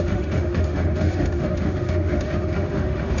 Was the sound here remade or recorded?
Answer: remade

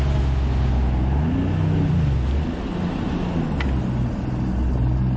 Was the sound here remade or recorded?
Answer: recorded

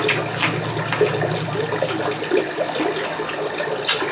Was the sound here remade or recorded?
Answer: recorded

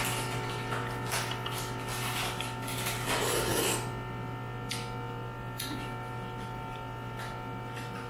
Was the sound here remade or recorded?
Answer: recorded